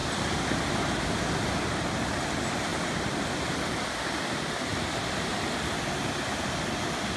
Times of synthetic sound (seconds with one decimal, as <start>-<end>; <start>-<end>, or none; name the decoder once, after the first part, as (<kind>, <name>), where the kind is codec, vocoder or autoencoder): 2.7-4.1 (vocoder, BigVGAN v2)

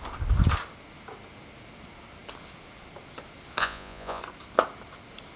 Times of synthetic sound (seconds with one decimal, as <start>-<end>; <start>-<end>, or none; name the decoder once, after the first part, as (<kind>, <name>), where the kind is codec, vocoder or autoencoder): 3.6-4.2 (vocoder, Vocos)

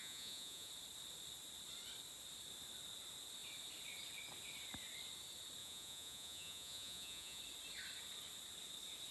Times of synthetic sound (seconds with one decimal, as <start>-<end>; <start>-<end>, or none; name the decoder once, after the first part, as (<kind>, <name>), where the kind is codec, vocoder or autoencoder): 0.0-0.7 (vocoder, Vocos); 5.6-7.4

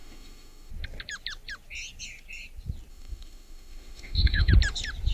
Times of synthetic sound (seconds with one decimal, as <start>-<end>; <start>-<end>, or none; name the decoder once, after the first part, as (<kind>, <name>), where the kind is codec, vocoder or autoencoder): 0.0-0.7 (autoencoder, DAC-VAE); 2.9-4.5

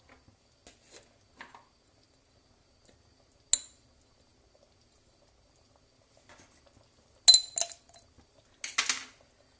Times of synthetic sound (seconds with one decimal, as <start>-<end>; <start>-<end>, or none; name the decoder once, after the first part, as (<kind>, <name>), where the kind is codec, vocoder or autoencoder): none

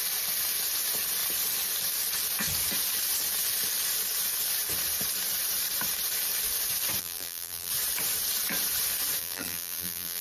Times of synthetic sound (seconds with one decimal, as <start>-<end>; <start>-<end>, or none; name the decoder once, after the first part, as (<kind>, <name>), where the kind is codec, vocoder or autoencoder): 7.0-7.7 (vocoder, BigVGAN v2); 9.2-10.2